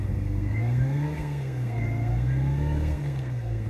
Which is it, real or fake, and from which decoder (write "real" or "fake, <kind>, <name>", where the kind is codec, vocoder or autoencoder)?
fake, codec, SNAC